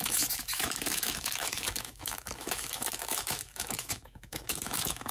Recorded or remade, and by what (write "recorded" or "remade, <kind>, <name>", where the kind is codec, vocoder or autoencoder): remade, autoencoder, DAC-VAE